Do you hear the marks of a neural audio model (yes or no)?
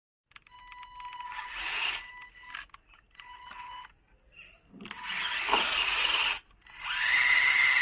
no